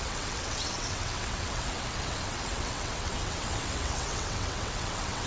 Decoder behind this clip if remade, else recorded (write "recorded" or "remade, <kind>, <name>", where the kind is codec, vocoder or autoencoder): remade, vocoder, WaveNeXt